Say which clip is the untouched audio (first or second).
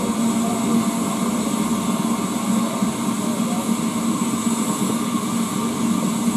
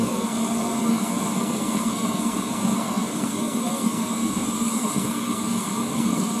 first